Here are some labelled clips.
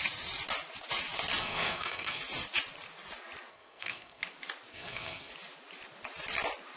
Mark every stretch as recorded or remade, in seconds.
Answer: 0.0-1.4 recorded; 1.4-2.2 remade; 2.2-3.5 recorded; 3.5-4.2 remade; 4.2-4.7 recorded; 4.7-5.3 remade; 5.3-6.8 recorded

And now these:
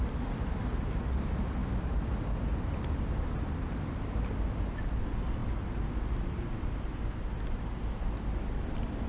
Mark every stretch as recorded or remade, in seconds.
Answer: 0.0-9.1 recorded

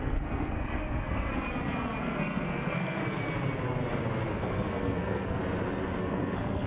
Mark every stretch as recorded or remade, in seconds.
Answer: 0.0-1.3 remade; 1.3-2.0 recorded; 2.0-3.0 remade; 3.0-4.3 recorded; 4.3-5.4 remade; 5.4-6.0 recorded; 6.0-6.7 remade

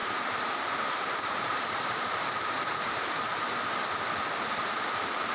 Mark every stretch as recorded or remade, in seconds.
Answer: 0.0-3.2 remade; 3.2-5.3 recorded

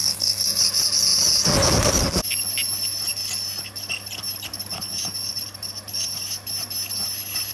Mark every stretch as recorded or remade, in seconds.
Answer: 0.0-0.6 remade; 0.6-7.5 recorded

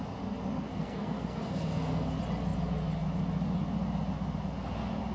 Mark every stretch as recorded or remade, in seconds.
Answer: 0.0-0.7 recorded; 0.7-2.1 remade; 2.1-5.1 recorded

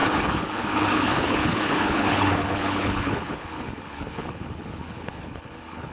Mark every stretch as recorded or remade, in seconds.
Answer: 0.0-5.9 remade

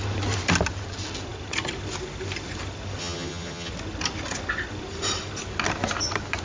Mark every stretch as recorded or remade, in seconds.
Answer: 0.0-3.0 recorded; 3.0-3.7 remade; 3.7-6.4 recorded